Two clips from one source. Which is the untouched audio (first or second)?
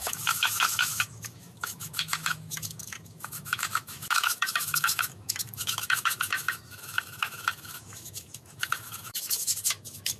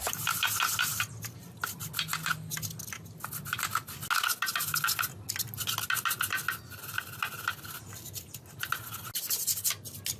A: second